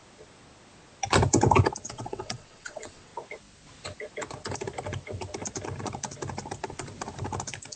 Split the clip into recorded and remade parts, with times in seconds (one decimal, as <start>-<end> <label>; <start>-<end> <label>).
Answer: 0.0-1.9 recorded; 1.9-3.1 remade; 3.1-7.8 recorded